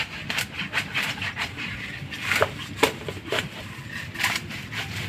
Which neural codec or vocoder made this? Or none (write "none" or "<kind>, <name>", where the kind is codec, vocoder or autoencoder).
vocoder, BigVGAN v2